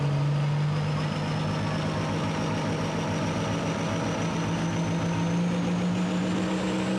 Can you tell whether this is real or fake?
real